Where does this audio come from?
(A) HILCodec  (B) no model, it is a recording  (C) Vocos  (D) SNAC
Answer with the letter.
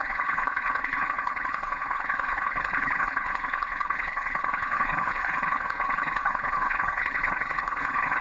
A